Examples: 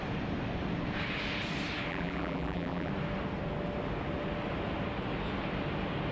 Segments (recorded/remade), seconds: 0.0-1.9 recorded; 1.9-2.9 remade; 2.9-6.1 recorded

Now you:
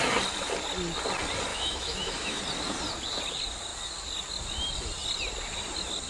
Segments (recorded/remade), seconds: 0.0-1.5 recorded; 1.5-2.4 remade; 2.4-6.1 recorded

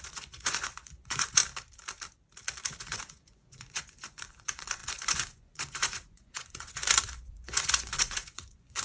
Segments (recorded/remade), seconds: 0.0-1.4 remade; 1.4-2.8 recorded; 2.8-8.8 remade

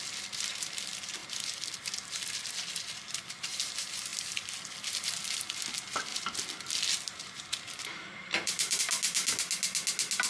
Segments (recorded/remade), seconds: 0.0-1.2 recorded; 1.2-3.3 remade; 3.3-4.1 recorded; 4.1-5.6 remade; 5.6-6.1 recorded; 6.1-8.8 remade; 8.8-10.3 recorded

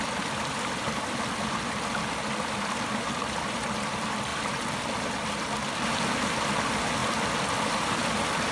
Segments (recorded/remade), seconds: 0.0-8.5 recorded